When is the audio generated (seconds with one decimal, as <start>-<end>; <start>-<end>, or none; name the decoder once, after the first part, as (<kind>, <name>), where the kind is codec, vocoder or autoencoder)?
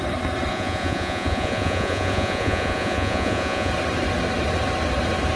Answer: 0.5-3.7 (vocoder, Vocos)